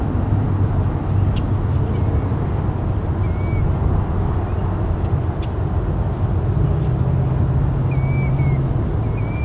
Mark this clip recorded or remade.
recorded